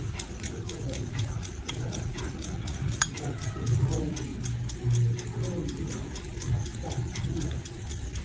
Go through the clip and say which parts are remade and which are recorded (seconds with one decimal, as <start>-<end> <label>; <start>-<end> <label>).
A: 0.0-4.3 remade; 4.3-5.8 recorded; 5.8-8.2 remade